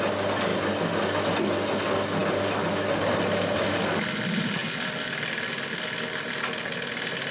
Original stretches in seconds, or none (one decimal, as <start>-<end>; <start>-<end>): 0.0-7.3